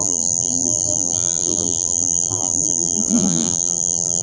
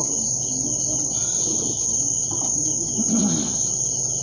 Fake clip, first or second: first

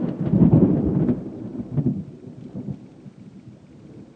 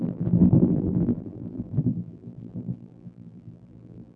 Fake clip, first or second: second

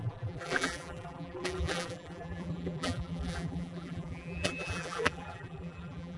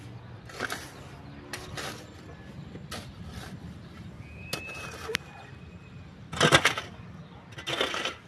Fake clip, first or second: first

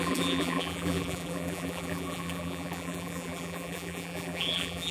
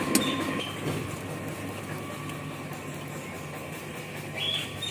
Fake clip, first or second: first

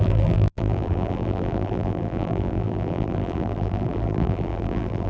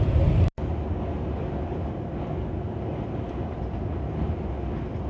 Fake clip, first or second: first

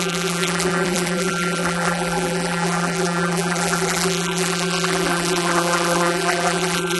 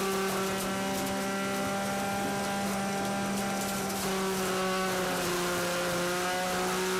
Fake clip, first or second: first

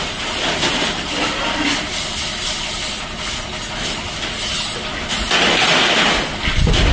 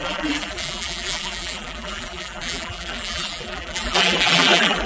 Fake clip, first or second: second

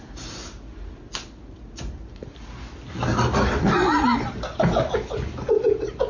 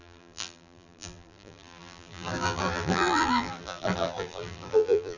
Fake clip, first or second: second